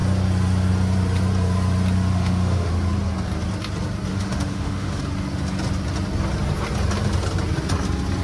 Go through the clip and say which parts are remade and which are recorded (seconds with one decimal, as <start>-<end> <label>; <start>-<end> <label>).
0.0-2.1 recorded; 2.1-2.7 remade; 2.7-4.1 recorded; 4.1-5.0 remade; 5.0-8.2 recorded